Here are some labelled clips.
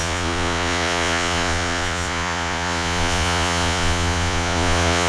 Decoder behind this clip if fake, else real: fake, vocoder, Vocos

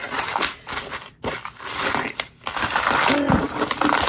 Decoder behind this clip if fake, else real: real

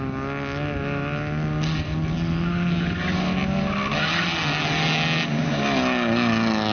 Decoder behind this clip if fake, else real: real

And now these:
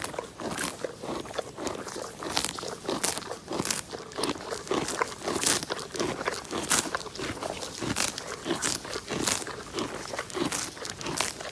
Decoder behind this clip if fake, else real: real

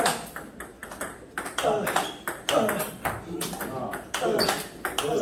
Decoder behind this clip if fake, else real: real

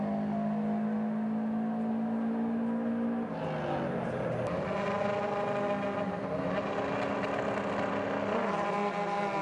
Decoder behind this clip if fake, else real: real